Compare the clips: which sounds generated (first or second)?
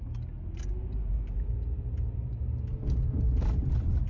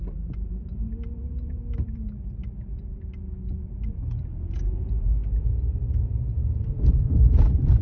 second